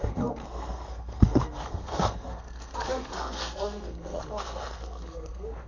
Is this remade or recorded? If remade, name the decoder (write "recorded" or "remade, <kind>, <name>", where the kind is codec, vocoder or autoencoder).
remade, codec, SNAC